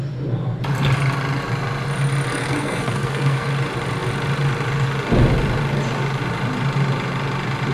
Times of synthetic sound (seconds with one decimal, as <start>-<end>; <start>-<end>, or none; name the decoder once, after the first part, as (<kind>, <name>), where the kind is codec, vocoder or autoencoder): 2.3-3.5 (codec, SNAC)